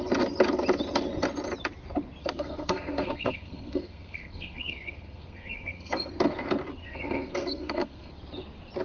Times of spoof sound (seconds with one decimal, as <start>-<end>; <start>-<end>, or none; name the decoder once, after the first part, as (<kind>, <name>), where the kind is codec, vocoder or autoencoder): 2.2-6.1 (codec, SNAC); 6.8-8.1